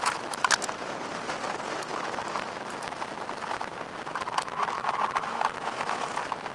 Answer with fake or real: real